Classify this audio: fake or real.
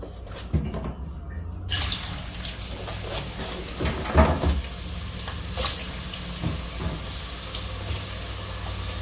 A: real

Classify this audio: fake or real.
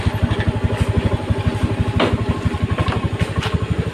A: real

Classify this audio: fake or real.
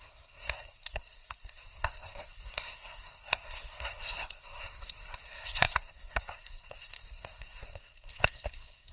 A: fake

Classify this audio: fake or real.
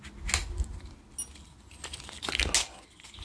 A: real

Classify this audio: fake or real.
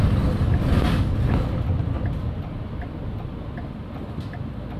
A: real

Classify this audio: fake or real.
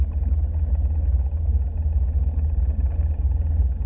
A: real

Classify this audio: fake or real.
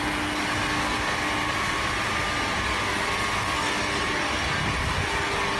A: real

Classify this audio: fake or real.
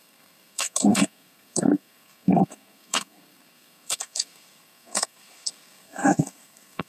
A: fake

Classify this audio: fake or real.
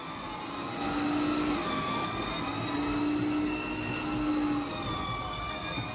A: real